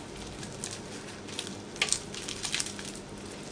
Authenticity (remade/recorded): recorded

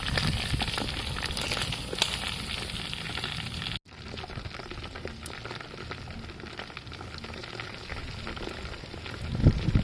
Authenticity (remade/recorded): recorded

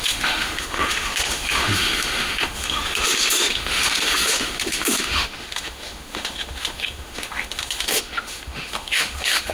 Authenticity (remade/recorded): remade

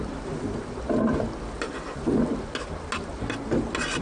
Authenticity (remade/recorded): recorded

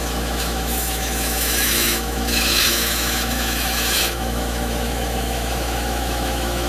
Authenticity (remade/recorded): remade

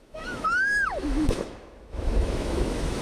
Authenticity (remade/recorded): remade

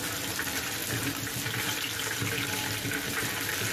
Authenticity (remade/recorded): recorded